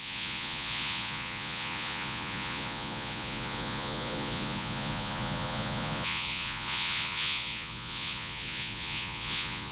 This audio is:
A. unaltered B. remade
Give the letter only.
B